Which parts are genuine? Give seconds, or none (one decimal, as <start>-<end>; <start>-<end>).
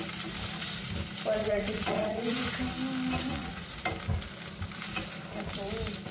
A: 0.0-1.4; 2.5-3.3; 3.8-6.1